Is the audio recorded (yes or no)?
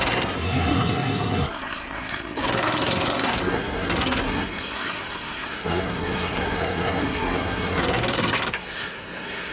no